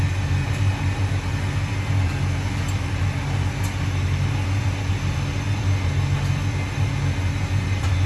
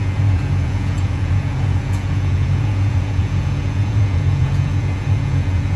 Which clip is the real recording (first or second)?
first